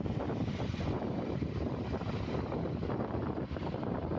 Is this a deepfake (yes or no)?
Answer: yes